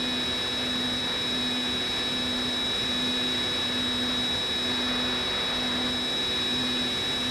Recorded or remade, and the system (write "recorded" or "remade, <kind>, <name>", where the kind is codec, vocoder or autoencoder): recorded